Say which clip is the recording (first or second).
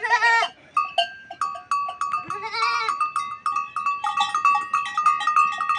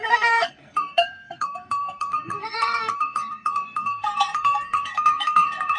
first